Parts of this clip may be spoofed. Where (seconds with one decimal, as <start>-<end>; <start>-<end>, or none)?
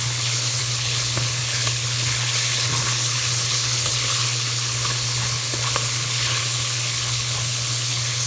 0.0-8.3